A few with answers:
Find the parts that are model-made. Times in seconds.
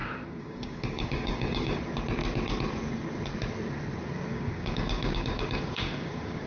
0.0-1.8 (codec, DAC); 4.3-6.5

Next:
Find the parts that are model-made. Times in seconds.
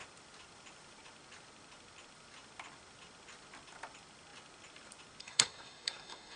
5.2-6.4 (codec, SNAC)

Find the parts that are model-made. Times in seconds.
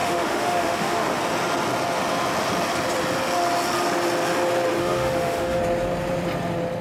0.0-1.2 (autoencoder, DAC-VAE); 4.8-5.6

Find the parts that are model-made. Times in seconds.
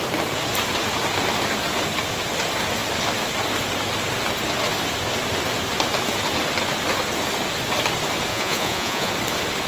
8.3-9.1 (vocoder, Vocos)